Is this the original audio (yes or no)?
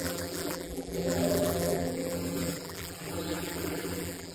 no